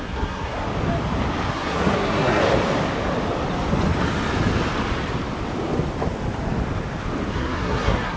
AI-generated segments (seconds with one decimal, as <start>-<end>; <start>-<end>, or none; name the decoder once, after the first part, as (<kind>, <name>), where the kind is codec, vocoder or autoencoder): 0.0-0.6 (codec, SNAC); 1.5-2.4; 7.3-8.2